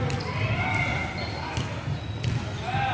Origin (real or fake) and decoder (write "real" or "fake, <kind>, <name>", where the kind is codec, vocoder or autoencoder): real